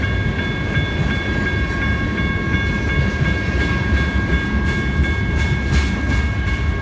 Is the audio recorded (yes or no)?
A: yes